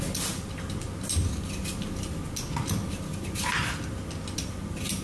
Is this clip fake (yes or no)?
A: no